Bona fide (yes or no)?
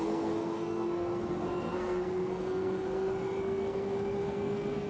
no